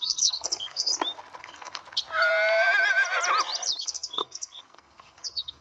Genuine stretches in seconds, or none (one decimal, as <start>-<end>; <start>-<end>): 0.9-1.4; 1.8-3.8